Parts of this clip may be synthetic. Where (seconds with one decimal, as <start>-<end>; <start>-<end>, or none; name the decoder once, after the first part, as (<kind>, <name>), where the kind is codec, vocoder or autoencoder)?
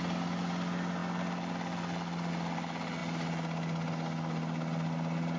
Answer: none